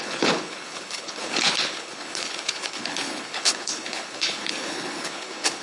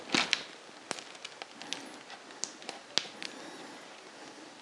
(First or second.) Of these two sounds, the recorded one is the second